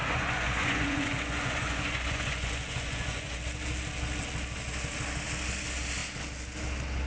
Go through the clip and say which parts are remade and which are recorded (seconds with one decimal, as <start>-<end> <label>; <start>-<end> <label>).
0.0-3.4 remade; 3.4-7.1 recorded